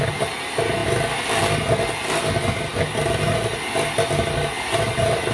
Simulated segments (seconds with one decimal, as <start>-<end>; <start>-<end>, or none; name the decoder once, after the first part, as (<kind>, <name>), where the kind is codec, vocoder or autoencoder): none

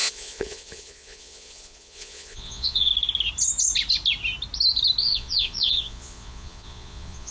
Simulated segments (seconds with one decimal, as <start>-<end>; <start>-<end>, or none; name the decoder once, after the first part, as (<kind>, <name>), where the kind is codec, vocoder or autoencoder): 0.0-2.9 (vocoder, Vocos); 5.0-7.3

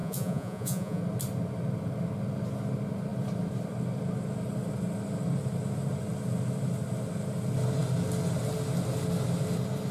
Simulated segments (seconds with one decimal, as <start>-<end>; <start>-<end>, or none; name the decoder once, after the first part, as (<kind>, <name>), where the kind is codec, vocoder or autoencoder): 0.0-1.0 (vocoder, Vocos)

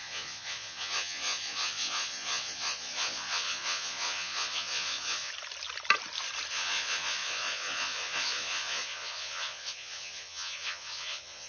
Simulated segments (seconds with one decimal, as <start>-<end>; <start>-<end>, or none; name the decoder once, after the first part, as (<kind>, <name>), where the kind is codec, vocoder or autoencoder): 0.0-5.3 (vocoder, Vocos); 6.5-11.5

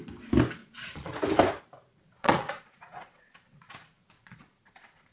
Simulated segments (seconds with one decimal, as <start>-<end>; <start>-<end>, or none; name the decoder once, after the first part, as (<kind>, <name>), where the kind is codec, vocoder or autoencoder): 0.6-1.2 (vocoder, Vocos); 1.9-5.1